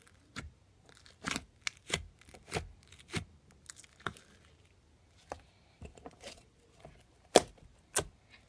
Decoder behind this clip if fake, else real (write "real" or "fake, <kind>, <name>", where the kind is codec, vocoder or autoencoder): real